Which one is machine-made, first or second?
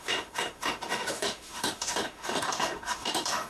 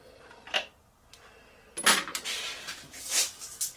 first